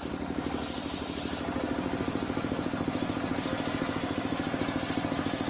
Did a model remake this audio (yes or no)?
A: no